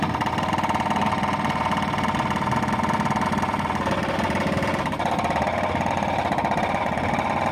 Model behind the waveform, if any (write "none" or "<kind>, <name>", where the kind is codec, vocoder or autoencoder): none